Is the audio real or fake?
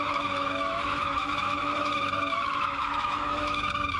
fake